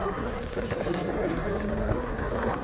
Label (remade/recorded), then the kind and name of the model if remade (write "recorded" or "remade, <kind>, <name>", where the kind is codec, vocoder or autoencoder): remade, codec, SNAC